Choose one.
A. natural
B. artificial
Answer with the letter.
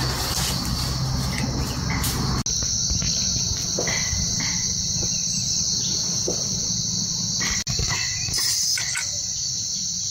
A